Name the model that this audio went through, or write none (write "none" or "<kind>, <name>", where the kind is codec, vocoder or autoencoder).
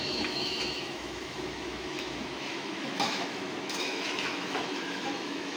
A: autoencoder, DAC-VAE